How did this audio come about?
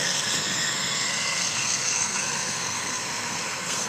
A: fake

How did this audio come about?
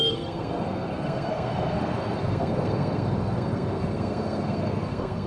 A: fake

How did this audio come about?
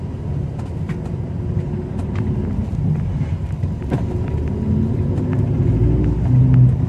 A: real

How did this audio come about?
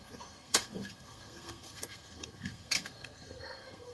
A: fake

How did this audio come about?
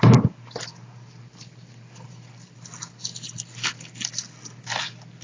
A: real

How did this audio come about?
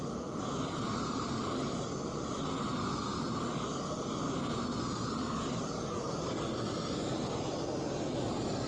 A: real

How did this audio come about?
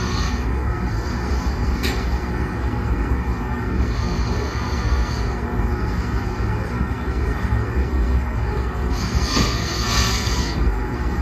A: fake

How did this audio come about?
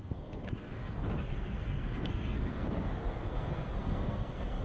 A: fake